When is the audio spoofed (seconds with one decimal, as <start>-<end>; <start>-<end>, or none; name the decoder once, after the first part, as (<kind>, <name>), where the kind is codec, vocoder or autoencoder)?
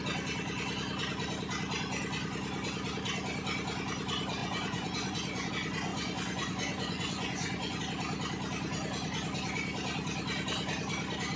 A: 4.4-5.5 (vocoder, Vocos); 5.9-7.8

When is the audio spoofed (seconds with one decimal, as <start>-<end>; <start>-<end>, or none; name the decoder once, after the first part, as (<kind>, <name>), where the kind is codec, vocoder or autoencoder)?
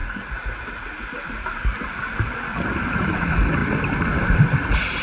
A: 3.0-3.6 (vocoder, BigVGAN v2); 4.1-5.0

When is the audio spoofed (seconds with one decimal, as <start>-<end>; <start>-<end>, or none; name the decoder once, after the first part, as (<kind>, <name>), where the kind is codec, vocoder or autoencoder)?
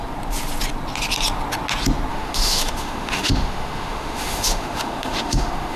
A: 2.1-5.8 (autoencoder, DAC-VAE)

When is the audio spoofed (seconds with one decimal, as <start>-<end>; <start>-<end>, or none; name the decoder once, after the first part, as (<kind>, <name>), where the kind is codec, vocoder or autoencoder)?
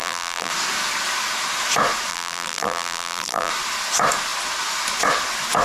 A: 0.0-0.5 (vocoder, BigVGAN v2); 2.1-3.5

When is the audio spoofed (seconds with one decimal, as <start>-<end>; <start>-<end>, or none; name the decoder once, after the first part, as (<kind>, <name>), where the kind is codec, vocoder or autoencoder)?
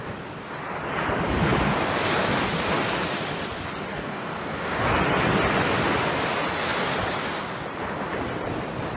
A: 3.9-4.9 (codec, DAC)